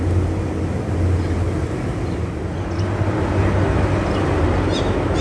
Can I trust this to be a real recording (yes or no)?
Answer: yes